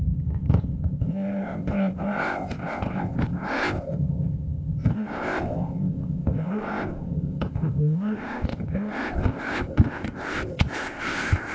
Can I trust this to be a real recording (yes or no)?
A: no